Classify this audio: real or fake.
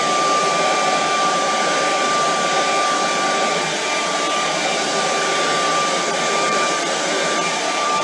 fake